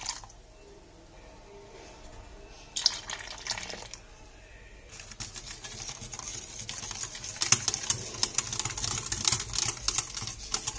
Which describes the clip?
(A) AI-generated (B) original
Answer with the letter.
B